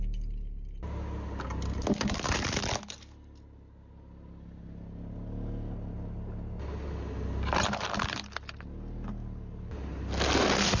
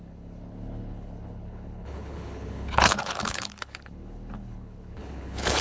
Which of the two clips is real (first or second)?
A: first